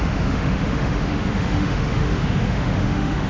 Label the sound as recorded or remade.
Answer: remade